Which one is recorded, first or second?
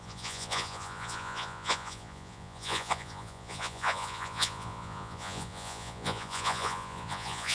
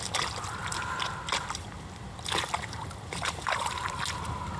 second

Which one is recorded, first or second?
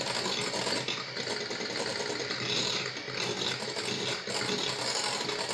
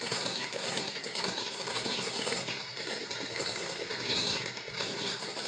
first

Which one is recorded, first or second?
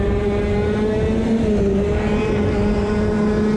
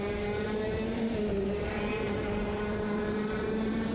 first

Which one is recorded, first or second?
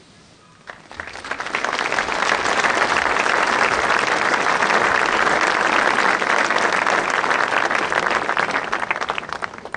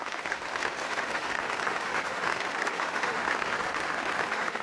first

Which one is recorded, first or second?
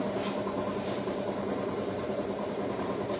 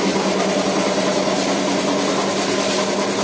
second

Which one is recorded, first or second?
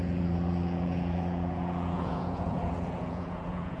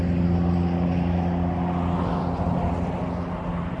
second